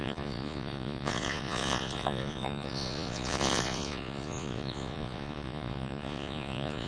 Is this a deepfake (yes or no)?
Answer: yes